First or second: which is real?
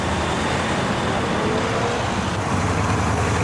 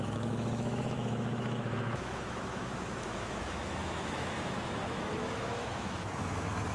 first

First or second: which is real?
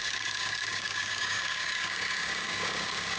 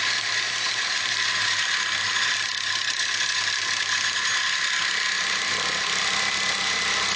second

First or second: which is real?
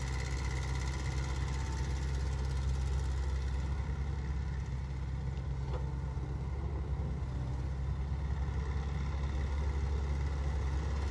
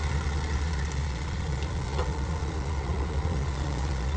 first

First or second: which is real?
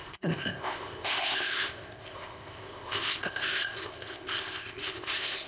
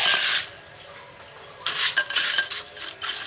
second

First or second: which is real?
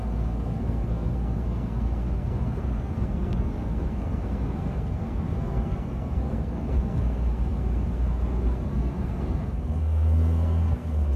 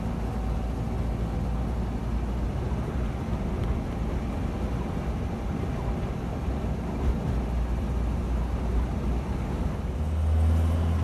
second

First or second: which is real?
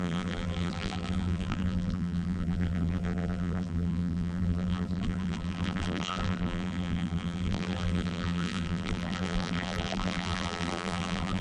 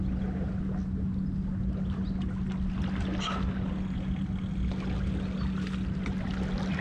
second